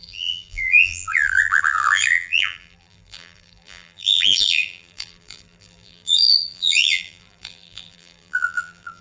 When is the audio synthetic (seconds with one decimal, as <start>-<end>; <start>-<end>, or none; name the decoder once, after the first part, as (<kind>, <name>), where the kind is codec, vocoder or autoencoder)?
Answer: 0.0-9.0 (vocoder, BigVGAN v2)